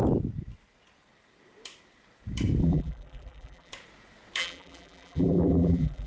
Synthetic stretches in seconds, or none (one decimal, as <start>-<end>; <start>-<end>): 2.6-3.7; 4.4-6.1